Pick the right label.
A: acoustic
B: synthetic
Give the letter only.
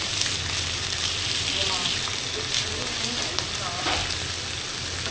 A